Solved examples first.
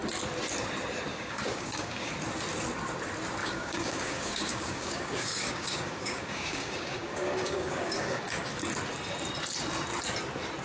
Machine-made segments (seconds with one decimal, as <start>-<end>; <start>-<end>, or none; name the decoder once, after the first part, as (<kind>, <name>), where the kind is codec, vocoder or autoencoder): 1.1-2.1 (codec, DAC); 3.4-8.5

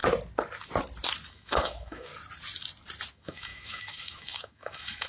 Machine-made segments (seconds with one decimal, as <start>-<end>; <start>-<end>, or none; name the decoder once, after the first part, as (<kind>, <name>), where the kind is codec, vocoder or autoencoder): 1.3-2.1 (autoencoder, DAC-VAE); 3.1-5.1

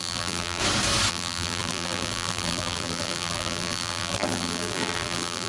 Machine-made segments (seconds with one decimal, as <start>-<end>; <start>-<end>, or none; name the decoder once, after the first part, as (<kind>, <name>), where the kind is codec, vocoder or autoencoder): 0.0-0.6 (vocoder, BigVGAN v2); 1.1-5.5

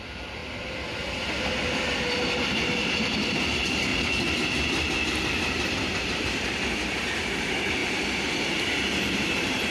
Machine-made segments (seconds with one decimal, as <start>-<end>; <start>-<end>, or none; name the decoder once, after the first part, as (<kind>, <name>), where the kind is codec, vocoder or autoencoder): 0.0-0.4 (vocoder, BigVGAN v2); 2.4-3.9; 6.0-7.8; 9.0-9.7